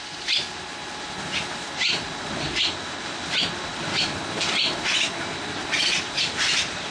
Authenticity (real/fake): real